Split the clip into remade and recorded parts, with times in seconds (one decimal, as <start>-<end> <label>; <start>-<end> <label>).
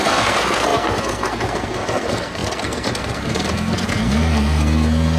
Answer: 0.0-5.2 remade